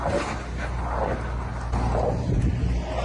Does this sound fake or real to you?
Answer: real